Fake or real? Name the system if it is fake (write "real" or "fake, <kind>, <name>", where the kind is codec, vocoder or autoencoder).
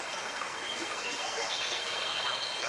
fake, codec, SNAC